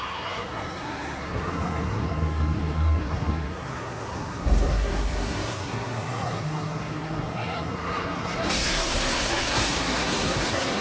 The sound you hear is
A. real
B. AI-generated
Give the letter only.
B